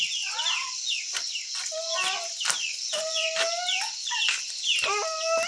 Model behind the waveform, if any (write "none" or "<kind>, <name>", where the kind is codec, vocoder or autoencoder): none